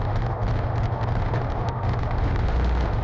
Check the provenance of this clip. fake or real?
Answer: fake